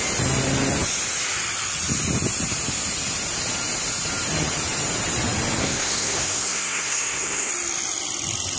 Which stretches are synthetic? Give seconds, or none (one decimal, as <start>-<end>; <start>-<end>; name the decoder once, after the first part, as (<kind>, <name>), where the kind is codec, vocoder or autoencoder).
5.6-7.5 (codec, SNAC)